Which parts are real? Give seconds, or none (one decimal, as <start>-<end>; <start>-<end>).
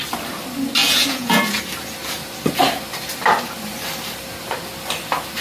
0.0-0.8; 1.4-5.4